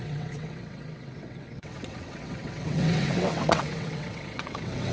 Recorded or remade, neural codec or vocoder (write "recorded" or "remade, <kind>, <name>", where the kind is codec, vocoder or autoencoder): remade, vocoder, WaveNeXt